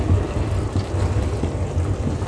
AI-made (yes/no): no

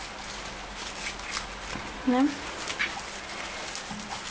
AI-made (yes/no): no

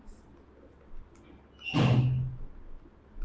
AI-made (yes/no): no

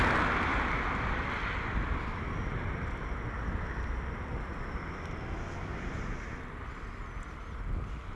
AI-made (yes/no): no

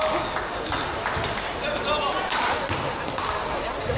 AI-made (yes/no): no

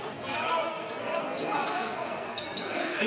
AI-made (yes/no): yes